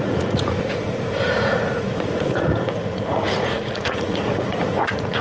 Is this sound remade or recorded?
remade